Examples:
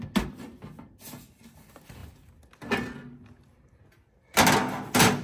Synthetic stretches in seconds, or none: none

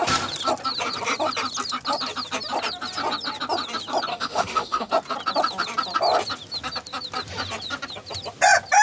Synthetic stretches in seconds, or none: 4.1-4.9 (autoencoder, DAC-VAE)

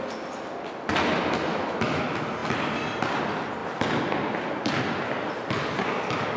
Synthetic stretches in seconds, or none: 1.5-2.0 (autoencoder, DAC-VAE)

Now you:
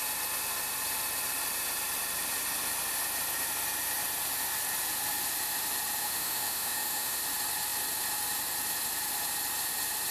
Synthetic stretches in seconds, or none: 6.0-7.2 (autoencoder, DAC-VAE)

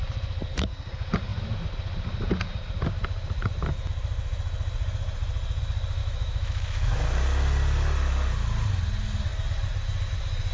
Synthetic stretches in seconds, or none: 6.0-7.0 (autoencoder, DAC-VAE)

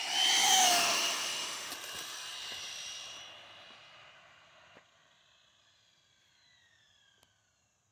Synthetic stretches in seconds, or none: 0.4-1.7 (autoencoder, DAC-VAE)

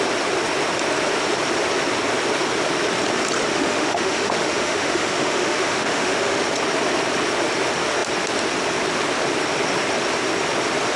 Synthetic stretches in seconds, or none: 3.5-6.4 (autoencoder, DAC-VAE)